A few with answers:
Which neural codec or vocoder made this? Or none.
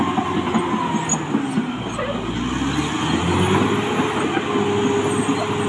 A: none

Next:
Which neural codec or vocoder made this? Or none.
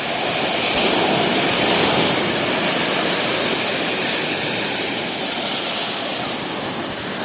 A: none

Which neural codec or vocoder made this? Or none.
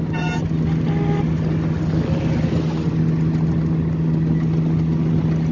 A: none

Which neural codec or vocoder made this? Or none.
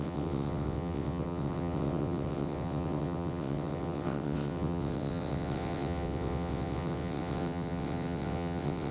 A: vocoder, WaveNeXt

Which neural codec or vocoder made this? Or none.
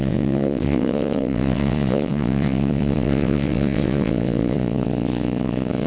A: vocoder, WaveNeXt